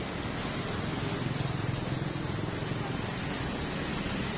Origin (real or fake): real